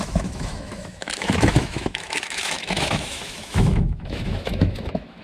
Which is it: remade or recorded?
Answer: remade